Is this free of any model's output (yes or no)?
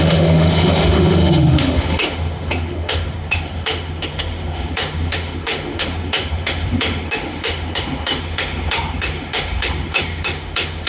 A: no